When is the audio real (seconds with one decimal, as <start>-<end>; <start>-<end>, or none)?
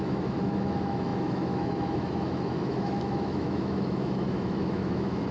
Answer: none